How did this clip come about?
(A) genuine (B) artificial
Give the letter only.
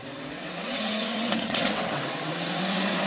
B